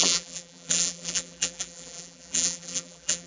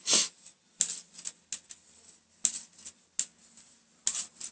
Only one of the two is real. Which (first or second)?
second